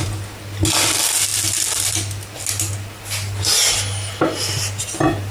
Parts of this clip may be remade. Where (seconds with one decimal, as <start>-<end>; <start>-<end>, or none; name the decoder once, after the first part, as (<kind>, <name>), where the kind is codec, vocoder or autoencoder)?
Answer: none

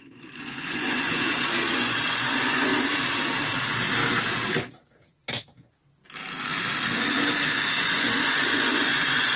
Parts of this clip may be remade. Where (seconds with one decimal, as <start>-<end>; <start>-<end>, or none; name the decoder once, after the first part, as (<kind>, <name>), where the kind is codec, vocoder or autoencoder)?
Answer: 0.0-2.7 (vocoder, Vocos); 7.7-9.4

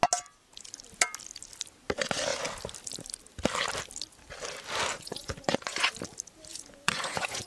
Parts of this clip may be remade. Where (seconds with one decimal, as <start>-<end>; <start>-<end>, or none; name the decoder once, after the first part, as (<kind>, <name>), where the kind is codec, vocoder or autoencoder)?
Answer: 4.9-5.9 (vocoder, Vocos); 6.5-7.5

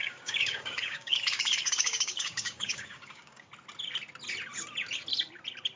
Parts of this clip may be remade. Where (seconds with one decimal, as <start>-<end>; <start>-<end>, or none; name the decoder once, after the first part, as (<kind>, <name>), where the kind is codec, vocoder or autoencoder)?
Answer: 0.0-3.5 (codec, DAC)

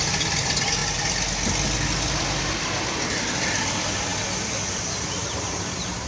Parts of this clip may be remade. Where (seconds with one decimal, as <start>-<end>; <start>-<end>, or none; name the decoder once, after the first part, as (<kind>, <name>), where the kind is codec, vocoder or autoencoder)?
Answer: 5.2-6.1 (vocoder, BigVGAN v2)